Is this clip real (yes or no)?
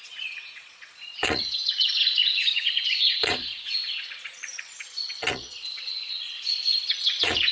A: no